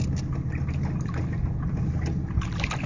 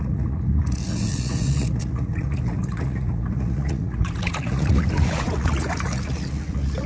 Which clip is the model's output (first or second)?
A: second